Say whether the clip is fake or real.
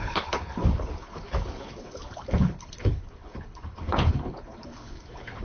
fake